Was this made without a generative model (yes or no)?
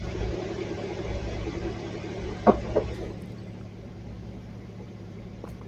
no